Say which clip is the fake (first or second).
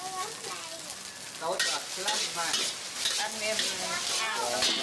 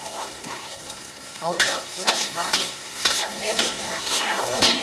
second